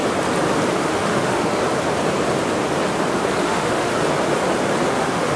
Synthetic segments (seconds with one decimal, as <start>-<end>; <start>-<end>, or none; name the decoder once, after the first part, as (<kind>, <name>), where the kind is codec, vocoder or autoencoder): 0.8-1.6 (autoencoder, DAC-VAE); 3.4-3.9; 4.9-5.4